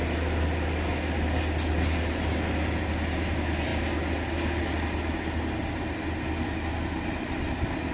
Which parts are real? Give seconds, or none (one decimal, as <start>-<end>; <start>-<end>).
0.0-7.9